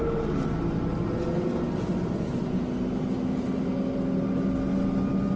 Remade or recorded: recorded